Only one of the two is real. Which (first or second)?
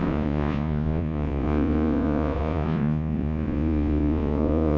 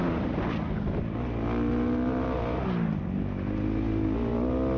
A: second